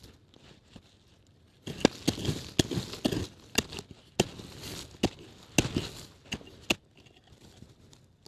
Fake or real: real